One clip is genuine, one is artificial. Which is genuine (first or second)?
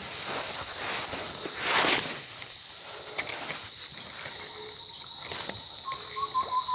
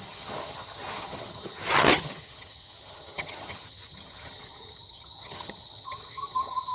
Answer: first